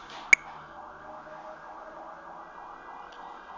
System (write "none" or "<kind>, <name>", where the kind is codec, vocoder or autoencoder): none